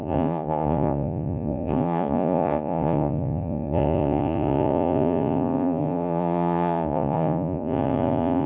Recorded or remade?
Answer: remade